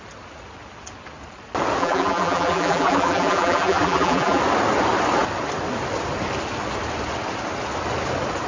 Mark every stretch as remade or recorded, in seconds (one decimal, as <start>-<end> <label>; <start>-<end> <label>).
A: 0.0-1.8 recorded; 1.8-4.4 remade; 4.4-8.5 recorded